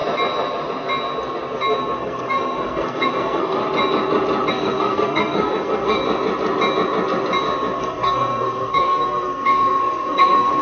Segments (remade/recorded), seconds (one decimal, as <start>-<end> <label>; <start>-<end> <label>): 0.0-2.0 recorded; 2.0-3.6 remade; 3.6-4.5 recorded; 4.5-6.0 remade; 6.0-7.8 recorded; 7.8-10.6 remade